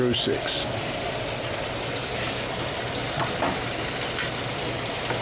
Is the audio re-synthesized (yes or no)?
no